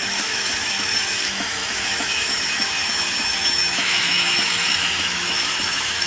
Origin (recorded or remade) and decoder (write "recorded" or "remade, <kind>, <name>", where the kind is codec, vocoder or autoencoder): remade, autoencoder, DAC-VAE